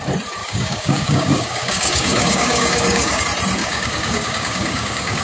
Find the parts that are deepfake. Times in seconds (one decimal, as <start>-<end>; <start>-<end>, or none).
0.4-3.2; 3.6-5.2